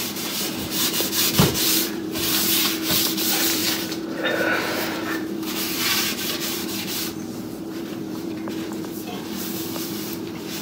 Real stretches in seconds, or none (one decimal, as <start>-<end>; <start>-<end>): none